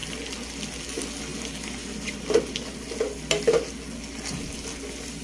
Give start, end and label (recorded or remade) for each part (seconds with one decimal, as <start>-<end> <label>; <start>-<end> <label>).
0.0-5.2 recorded